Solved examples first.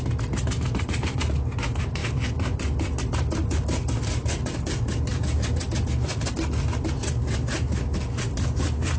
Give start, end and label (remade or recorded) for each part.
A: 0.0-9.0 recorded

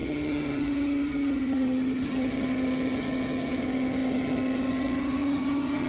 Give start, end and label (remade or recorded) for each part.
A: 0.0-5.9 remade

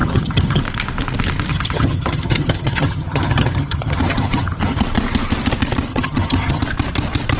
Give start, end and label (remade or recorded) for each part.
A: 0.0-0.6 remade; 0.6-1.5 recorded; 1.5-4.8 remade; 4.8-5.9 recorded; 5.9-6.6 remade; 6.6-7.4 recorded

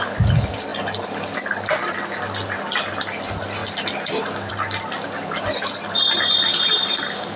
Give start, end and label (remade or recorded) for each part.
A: 0.0-7.4 recorded

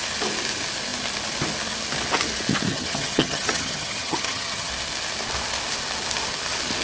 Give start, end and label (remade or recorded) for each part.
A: 0.0-2.7 recorded; 2.7-4.7 remade; 4.7-6.8 recorded

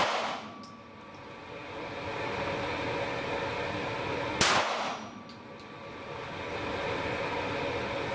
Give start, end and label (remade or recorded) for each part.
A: 0.0-8.1 recorded